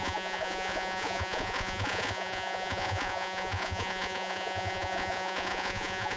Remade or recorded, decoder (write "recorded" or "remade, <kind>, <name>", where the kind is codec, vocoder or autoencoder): remade, vocoder, Vocos